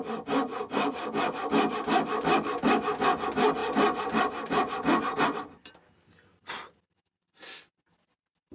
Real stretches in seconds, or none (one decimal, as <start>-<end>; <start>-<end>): 0.0-0.5; 1.2-3.6; 5.7-6.3; 7.3-8.5